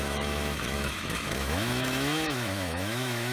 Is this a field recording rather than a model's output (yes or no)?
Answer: no